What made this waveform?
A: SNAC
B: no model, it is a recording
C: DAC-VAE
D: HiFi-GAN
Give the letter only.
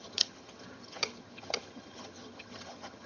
D